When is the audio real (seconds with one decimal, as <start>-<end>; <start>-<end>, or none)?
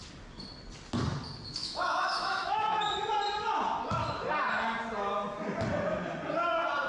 0.0-1.6; 2.9-6.9